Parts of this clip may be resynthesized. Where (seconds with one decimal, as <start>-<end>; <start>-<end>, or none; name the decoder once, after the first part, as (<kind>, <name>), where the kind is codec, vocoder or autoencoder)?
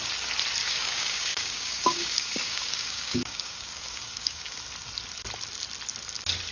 0.6-4.5 (codec, DAC)